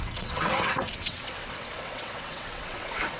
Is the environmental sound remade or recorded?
remade